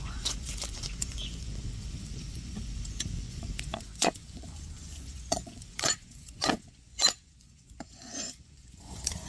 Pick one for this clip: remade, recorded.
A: remade